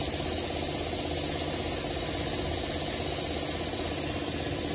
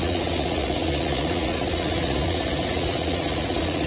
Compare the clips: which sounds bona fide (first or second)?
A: first